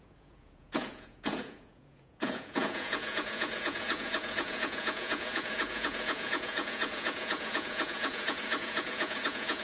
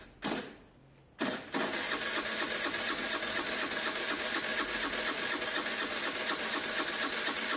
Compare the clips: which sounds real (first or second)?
second